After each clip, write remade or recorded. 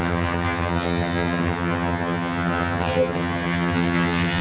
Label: remade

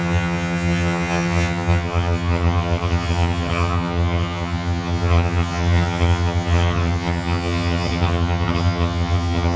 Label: remade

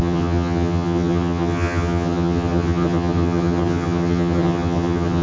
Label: remade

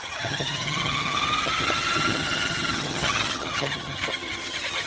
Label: remade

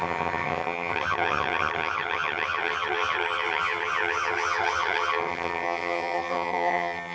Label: remade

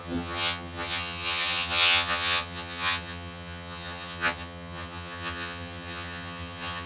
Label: remade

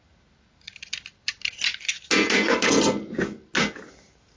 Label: recorded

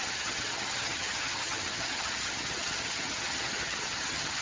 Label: remade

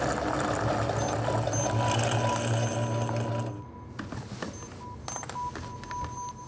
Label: recorded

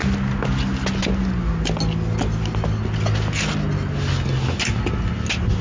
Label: recorded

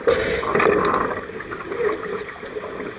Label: recorded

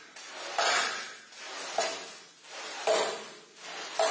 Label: recorded